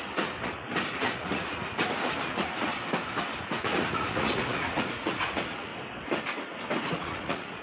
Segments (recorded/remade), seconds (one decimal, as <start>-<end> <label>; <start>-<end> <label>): 0.0-2.7 remade; 2.7-3.5 recorded; 3.5-5.7 remade; 5.7-6.9 recorded; 6.9-7.6 remade